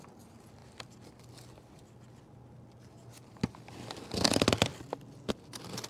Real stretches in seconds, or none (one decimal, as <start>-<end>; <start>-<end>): 0.0-5.9